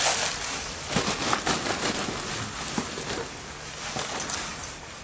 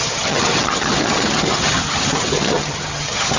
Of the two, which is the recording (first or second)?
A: first